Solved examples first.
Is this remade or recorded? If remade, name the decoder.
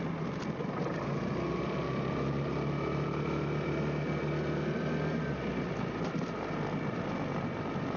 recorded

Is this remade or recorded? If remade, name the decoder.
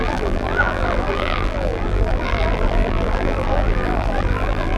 remade, vocoder, BigVGAN v2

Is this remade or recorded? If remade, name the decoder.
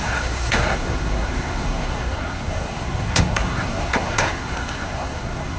remade, codec, SNAC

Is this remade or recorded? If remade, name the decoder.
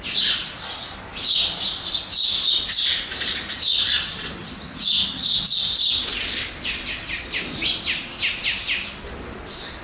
recorded